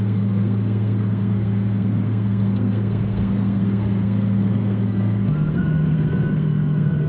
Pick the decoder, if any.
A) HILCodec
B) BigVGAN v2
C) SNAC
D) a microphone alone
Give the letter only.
C